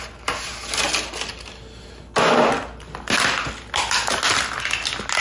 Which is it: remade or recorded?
recorded